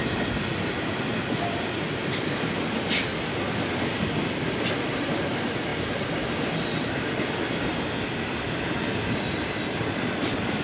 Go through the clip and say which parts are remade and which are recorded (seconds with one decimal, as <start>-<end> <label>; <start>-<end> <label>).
0.0-10.6 recorded